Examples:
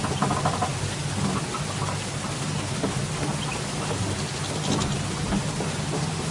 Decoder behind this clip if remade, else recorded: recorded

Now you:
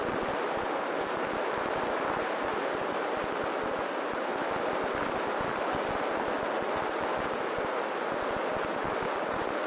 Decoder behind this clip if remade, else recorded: recorded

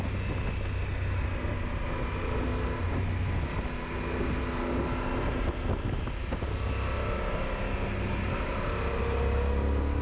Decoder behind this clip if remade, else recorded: recorded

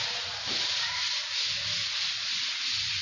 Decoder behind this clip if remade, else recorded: recorded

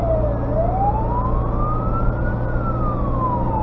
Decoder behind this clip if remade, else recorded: recorded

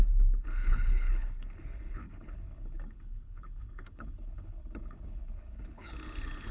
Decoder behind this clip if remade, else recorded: remade, codec, HILCodec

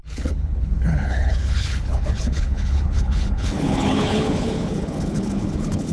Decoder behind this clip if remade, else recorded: remade, codec, HILCodec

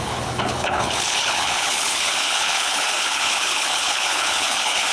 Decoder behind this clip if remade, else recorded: remade, codec, HILCodec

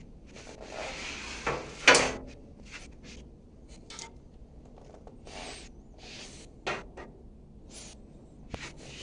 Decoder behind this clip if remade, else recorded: recorded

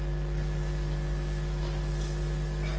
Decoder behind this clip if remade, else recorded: recorded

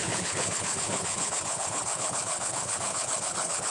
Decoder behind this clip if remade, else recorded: remade, codec, HILCodec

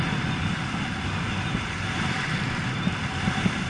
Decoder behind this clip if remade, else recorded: recorded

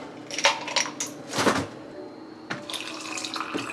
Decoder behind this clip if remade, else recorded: recorded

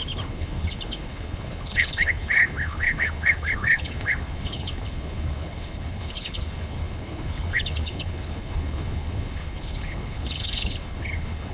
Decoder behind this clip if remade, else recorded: remade, codec, HILCodec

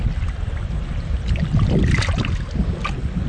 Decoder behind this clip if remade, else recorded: recorded